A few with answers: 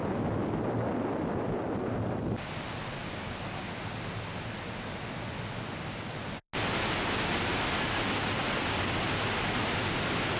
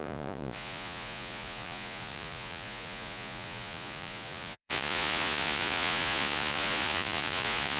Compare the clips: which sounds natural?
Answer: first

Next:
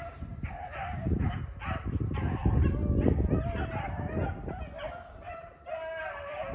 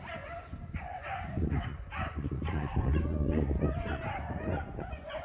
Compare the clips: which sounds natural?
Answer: first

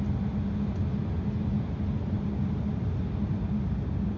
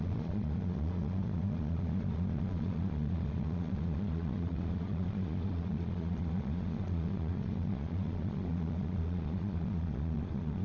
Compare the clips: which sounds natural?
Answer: first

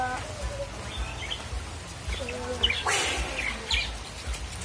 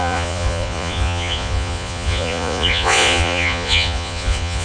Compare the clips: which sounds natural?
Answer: first